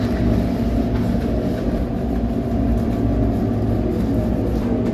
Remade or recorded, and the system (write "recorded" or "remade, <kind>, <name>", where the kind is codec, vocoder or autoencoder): recorded